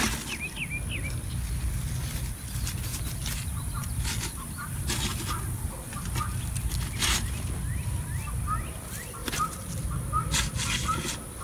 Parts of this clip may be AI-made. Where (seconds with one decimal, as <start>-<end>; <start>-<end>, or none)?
2.9-5.0; 9.2-9.7